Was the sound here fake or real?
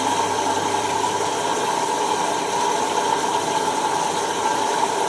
fake